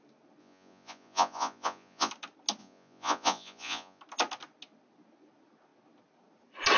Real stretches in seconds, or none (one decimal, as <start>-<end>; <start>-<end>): 0.0-0.4; 2.1-2.6; 4.0-6.8